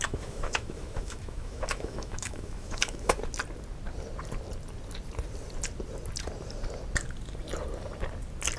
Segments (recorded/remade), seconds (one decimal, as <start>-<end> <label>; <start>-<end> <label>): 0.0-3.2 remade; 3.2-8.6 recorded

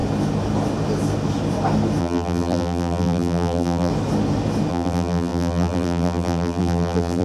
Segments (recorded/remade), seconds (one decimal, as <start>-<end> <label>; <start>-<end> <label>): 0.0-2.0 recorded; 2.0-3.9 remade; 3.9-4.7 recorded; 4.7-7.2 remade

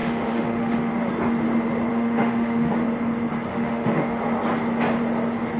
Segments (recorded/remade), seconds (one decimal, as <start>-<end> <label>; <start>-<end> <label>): 0.0-0.9 remade; 0.9-1.9 recorded; 1.9-2.7 remade; 2.7-3.5 recorded; 3.5-4.2 remade; 4.2-5.6 recorded

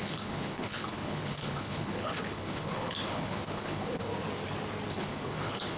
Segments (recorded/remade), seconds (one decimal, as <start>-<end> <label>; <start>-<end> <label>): 0.0-4.1 remade; 4.1-4.9 recorded; 4.9-5.8 remade

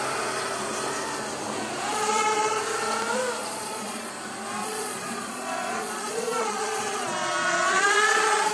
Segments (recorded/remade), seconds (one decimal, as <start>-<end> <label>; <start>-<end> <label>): 0.0-1.9 recorded; 1.9-2.6 remade; 2.6-3.4 recorded; 3.4-4.1 remade; 4.1-4.6 recorded; 4.6-8.5 remade

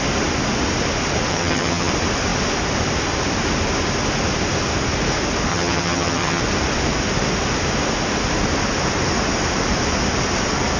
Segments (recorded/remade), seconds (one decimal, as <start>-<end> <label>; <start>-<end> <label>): 0.0-1.3 recorded; 1.3-1.9 remade; 1.9-5.5 recorded; 5.5-6.4 remade; 6.4-10.8 recorded